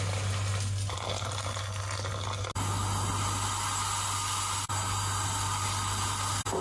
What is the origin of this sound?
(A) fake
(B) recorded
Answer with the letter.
B